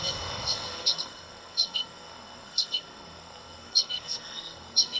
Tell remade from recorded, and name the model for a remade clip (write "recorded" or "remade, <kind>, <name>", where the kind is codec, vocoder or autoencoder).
remade, codec, SNAC